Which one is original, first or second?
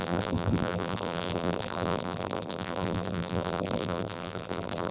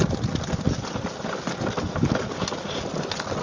second